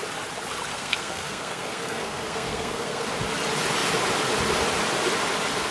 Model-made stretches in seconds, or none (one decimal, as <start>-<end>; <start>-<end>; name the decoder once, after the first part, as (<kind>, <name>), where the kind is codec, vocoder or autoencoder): 0.7-3.1 (codec, SNAC)